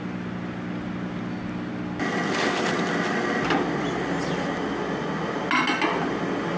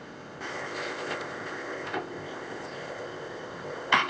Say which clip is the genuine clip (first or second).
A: first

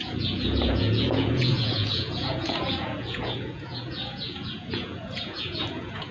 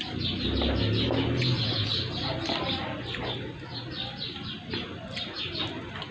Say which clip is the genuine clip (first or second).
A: second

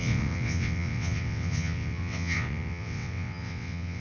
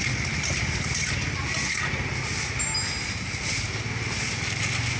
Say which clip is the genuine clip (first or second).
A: second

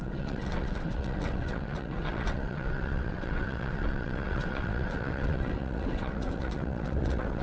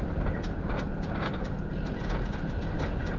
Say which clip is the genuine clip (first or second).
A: second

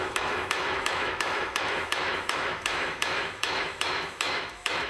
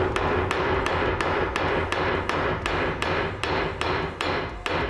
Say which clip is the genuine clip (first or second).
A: second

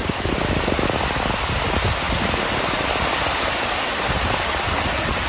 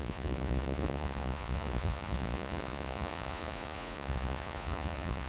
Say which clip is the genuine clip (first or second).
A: first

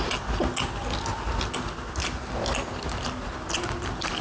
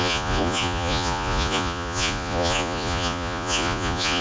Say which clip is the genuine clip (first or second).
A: first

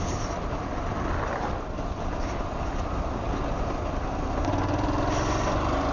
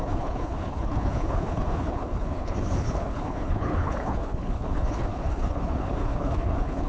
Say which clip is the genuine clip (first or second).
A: first